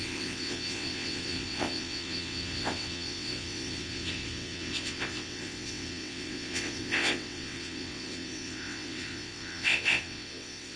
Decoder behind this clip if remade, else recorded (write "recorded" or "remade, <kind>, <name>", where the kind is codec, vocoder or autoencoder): remade, vocoder, WaveNeXt